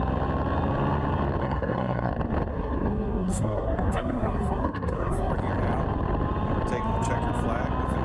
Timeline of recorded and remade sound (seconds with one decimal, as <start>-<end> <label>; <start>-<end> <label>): 0.0-1.4 recorded; 1.4-2.1 remade; 2.1-2.5 recorded; 2.5-5.3 remade; 5.3-8.0 recorded